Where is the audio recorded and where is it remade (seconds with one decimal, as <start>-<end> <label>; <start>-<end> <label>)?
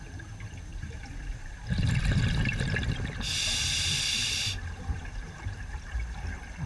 0.0-0.7 recorded; 0.7-1.9 remade; 1.9-3.5 recorded; 3.5-6.3 remade; 6.3-6.7 recorded